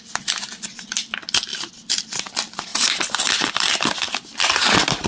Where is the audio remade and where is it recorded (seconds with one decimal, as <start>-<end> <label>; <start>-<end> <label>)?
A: 0.0-5.1 remade